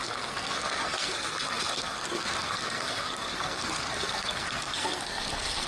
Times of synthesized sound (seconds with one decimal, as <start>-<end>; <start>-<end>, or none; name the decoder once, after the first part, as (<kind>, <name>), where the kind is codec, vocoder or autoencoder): 0.0-5.7 (codec, SNAC)